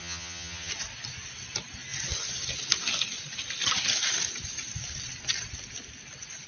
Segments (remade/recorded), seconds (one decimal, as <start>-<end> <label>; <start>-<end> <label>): 0.0-0.7 remade; 0.7-6.5 recorded

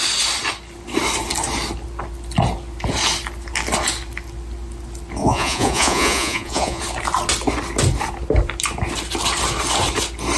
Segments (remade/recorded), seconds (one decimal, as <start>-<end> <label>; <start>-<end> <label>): 0.0-5.2 recorded; 5.2-6.8 remade; 6.8-10.4 recorded

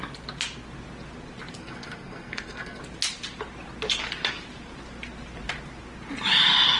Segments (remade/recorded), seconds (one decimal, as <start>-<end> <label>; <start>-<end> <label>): 0.0-1.6 recorded; 1.6-2.8 remade; 2.8-6.8 recorded

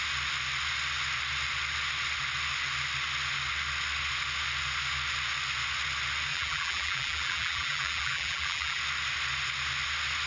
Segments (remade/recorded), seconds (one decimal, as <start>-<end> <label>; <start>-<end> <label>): 0.0-6.3 recorded; 6.3-8.8 remade; 8.8-10.3 recorded

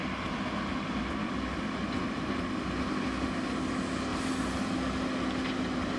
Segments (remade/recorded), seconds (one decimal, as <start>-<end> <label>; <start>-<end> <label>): 0.0-6.0 recorded